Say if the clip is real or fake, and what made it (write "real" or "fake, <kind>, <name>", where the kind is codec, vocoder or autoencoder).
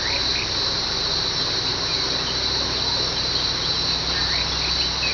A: real